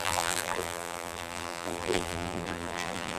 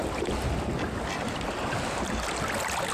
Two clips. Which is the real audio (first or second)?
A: second